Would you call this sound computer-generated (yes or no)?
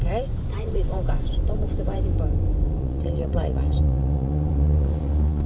yes